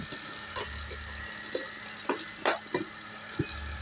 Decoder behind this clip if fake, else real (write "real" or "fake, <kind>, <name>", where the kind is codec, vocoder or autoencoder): real